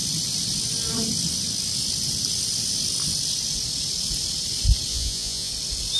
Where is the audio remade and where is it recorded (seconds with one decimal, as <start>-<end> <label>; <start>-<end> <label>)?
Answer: 0.0-4.9 recorded; 4.9-5.5 remade; 5.5-6.0 recorded